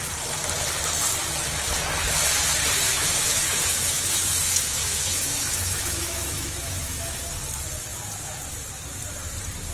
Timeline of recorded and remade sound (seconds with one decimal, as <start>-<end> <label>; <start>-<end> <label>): 0.0-2.9 recorded; 2.9-7.2 remade; 7.2-9.7 recorded